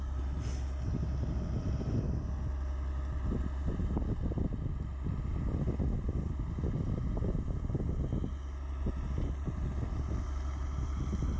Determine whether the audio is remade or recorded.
recorded